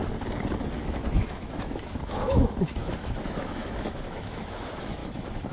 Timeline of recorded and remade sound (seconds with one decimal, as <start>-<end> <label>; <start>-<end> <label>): 0.0-0.8 recorded; 0.8-5.5 remade